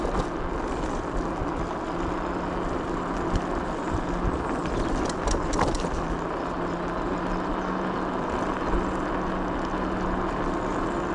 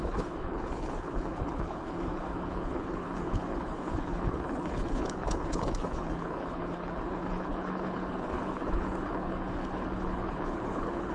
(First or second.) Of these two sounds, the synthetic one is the second